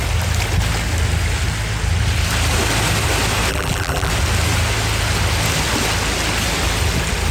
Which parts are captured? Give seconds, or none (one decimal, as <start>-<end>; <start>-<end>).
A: 0.0-3.5; 4.1-7.3